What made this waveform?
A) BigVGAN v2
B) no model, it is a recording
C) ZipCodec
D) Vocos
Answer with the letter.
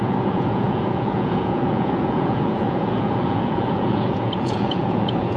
D